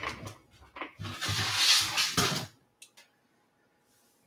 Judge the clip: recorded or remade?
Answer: recorded